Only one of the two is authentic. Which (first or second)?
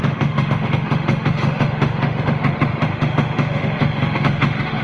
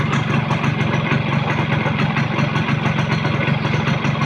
second